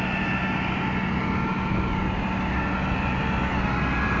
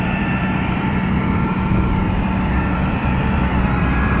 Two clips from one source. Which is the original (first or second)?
first